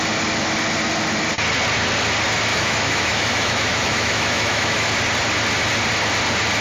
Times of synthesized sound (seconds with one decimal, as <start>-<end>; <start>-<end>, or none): 2.5-4.9